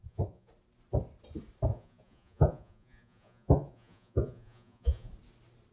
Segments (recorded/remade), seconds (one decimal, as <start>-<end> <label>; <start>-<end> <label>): 0.0-0.5 remade; 0.5-1.7 recorded; 1.7-5.1 remade; 5.1-5.7 recorded